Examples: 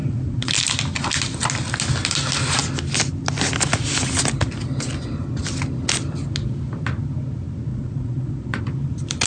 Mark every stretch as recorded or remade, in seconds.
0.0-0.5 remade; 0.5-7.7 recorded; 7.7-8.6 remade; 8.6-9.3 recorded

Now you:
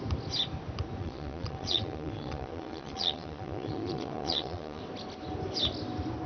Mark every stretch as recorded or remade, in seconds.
0.0-1.0 recorded; 1.0-4.8 remade; 4.8-6.3 recorded

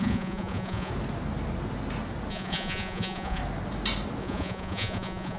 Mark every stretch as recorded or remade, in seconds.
0.0-0.9 remade; 0.9-2.3 recorded; 2.3-3.4 remade; 3.4-4.2 recorded; 4.2-5.4 remade

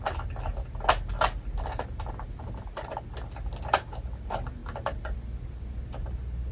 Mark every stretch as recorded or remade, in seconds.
0.0-6.5 recorded

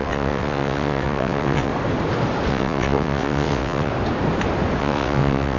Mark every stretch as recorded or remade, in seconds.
0.0-1.7 remade; 1.7-2.5 recorded; 2.5-3.9 remade; 3.9-4.8 recorded; 4.8-5.6 remade

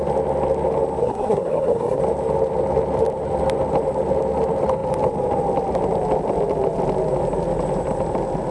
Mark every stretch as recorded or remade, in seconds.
0.0-1.0 recorded; 1.0-2.0 remade; 2.0-8.5 recorded